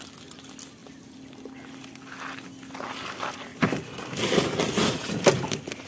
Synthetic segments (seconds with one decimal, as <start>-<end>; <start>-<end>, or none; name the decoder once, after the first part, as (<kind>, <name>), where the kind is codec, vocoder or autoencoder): 3.5-4.0 (vocoder, BigVGAN v2)